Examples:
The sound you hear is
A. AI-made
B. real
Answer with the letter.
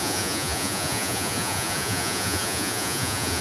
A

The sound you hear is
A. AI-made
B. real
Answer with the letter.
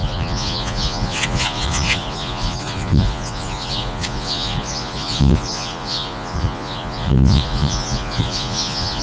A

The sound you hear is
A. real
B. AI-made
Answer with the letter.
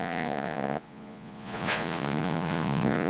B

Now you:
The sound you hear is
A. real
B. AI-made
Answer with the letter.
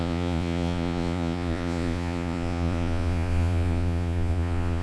B